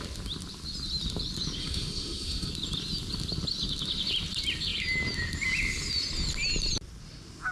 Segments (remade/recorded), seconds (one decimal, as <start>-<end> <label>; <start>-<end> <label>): 0.0-1.6 recorded; 1.6-2.5 remade; 2.5-7.5 recorded